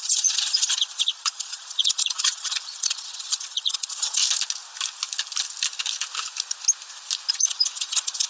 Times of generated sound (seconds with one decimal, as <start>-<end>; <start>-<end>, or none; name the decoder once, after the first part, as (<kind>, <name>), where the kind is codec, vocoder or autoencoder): 0.0-4.2 (vocoder, Vocos); 7.3-8.3